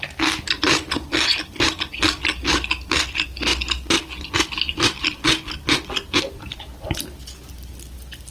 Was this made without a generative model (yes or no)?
yes